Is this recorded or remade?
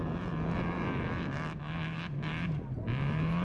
recorded